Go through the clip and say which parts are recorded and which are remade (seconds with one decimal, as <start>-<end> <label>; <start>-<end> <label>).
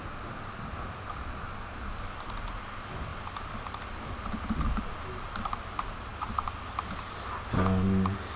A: 0.0-8.4 recorded